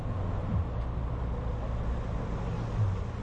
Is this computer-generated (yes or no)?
no